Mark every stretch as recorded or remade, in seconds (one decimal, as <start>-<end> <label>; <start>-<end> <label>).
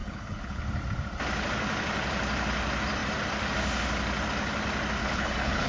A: 0.0-0.6 remade; 0.6-5.0 recorded; 5.0-5.7 remade